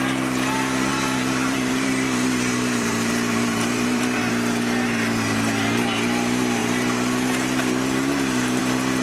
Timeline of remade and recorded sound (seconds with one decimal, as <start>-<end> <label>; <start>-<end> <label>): 0.0-0.9 recorded; 0.9-4.3 remade; 4.3-6.6 recorded; 6.6-8.6 remade; 8.6-9.0 recorded